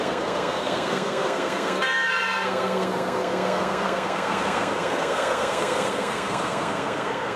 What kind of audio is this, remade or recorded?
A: remade